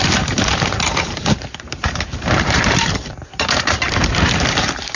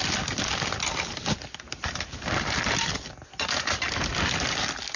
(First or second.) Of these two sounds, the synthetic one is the first